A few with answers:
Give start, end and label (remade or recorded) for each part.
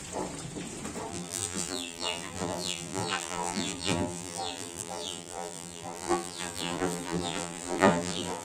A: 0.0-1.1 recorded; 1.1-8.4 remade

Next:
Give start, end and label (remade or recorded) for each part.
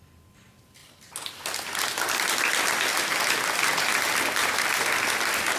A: 0.0-5.6 recorded